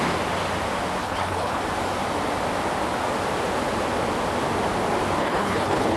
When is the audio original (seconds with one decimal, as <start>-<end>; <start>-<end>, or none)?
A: 0.0-1.0; 1.6-5.2

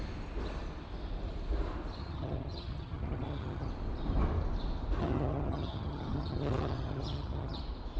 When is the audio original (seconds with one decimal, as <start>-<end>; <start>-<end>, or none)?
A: 0.0-2.0; 3.7-5.0; 7.6-8.0

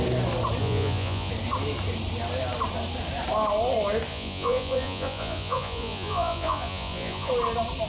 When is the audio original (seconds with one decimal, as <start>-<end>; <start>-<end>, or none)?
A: 0.0-0.6; 1.3-4.1; 7.3-7.9

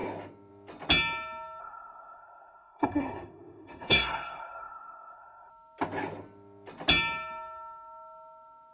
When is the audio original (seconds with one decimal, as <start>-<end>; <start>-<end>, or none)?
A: 0.0-1.6; 5.5-8.7

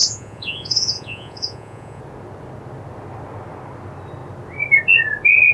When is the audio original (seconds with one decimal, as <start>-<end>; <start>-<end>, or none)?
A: 2.0-5.5

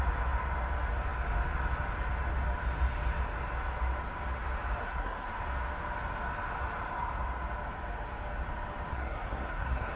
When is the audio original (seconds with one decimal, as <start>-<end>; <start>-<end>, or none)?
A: 0.0-4.8; 5.4-8.9

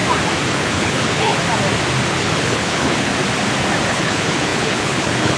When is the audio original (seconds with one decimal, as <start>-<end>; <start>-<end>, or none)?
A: 0.0-0.5; 1.4-2.1; 3.1-3.9

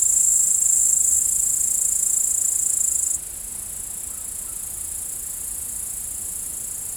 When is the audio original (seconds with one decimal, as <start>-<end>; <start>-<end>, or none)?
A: 0.0-7.0